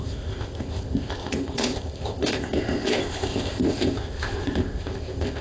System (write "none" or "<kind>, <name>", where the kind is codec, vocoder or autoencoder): codec, ZipCodec